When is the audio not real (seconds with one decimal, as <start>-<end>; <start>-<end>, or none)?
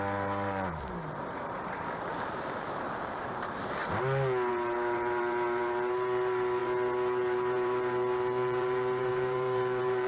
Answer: 0.0-3.8; 4.5-10.1